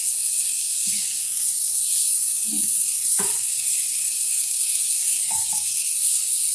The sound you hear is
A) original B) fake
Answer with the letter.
B